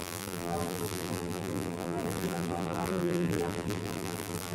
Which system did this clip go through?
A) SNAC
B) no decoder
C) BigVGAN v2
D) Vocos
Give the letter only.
C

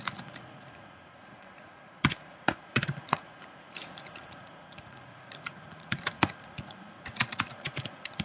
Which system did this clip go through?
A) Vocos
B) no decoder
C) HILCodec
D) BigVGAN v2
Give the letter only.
A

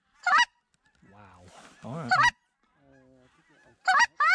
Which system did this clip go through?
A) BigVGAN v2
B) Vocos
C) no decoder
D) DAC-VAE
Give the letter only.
C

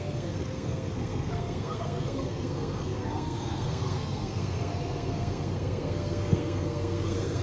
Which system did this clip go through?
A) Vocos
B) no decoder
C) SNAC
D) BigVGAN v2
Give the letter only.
C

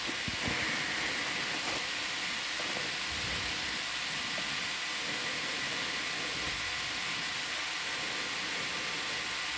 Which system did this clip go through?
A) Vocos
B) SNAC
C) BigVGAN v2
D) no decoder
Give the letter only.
D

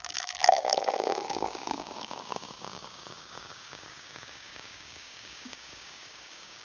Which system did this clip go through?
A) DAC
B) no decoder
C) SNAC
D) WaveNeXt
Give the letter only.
A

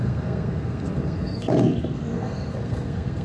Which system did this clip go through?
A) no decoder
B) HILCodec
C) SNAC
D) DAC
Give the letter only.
C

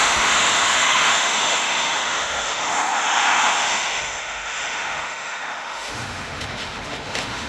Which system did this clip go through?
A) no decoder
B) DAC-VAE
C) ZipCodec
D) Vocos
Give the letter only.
B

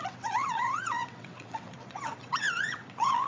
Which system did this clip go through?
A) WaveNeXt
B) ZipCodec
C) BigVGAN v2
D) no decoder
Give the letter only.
A